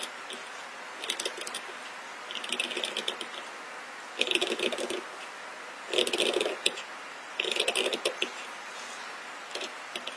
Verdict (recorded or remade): recorded